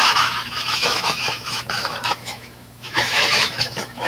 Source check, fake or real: fake